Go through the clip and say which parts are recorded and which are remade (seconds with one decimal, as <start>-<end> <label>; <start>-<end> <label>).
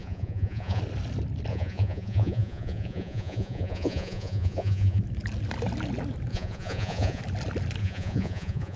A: 0.0-0.8 remade; 0.8-1.5 recorded; 1.5-5.0 remade; 5.0-6.3 recorded; 6.3-7.2 remade; 7.2-7.8 recorded; 7.8-8.8 remade